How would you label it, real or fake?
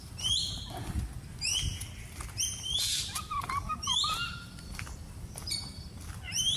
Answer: real